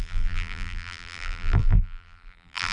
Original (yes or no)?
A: no